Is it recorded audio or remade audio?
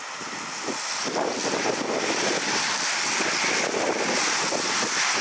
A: recorded